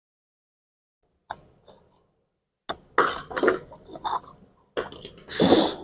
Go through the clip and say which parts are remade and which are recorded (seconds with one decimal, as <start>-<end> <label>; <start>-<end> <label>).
0.0-5.8 recorded